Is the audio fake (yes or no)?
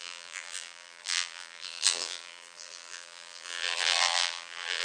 yes